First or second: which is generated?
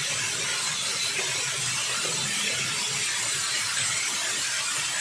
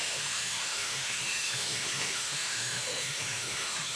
second